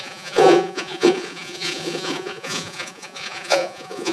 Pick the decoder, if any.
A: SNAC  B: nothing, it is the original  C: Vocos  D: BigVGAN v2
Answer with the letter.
C